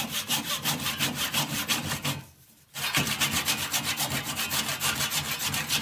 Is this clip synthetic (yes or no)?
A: no